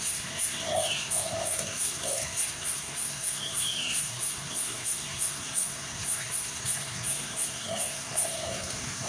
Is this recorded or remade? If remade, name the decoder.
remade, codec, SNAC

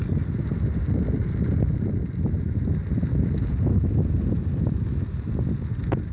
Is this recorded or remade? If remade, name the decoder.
recorded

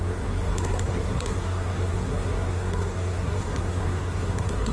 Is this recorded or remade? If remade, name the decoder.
remade, codec, SNAC